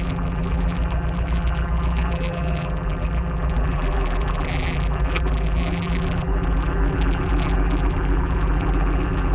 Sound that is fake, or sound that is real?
fake